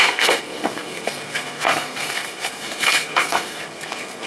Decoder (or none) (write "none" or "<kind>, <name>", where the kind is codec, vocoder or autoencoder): codec, SNAC